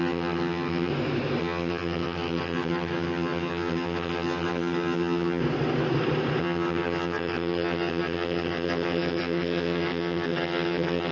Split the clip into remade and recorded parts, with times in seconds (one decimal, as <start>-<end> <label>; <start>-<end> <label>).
0.0-0.9 remade; 0.9-1.4 recorded; 1.4-5.4 remade; 5.4-6.4 recorded; 6.4-11.1 remade